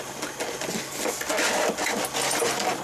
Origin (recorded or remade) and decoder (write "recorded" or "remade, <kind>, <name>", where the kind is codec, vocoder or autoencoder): recorded